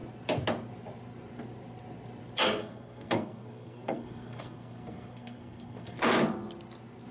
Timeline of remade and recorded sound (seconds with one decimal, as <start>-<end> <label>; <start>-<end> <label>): 0.0-2.6 recorded; 2.6-6.0 remade; 6.0-7.1 recorded